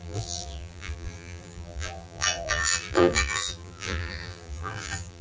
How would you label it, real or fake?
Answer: fake